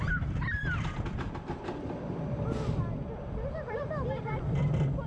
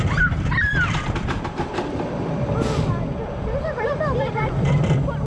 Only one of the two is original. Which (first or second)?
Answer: first